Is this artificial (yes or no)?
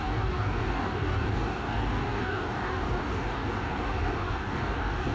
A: yes